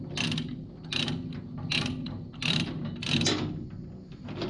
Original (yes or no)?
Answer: yes